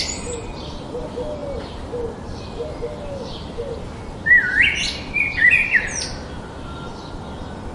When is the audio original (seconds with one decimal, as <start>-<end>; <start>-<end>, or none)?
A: 0.0-7.7